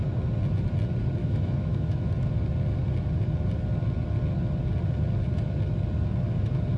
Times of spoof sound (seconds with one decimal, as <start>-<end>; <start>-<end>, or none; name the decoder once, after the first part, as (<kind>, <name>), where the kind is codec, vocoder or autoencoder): 1.2-2.1 (autoencoder, DAC-VAE)